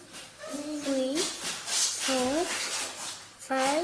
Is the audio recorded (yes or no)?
yes